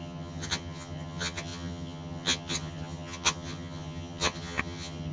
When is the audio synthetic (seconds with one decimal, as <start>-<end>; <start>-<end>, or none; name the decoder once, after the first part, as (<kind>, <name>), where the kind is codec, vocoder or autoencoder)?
0.0-5.1 (vocoder, HiFi-GAN)